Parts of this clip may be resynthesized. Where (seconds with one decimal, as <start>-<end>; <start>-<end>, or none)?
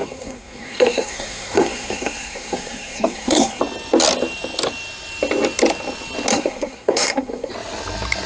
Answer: 0.0-3.6; 6.3-7.5